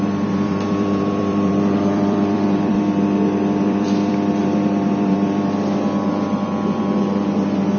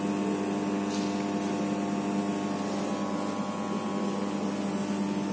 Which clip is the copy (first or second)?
first